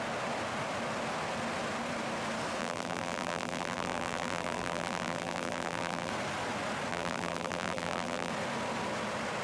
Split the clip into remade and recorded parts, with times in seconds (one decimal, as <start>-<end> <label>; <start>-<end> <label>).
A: 0.0-2.6 recorded; 2.6-6.1 remade; 6.1-6.9 recorded; 6.9-8.3 remade; 8.3-9.4 recorded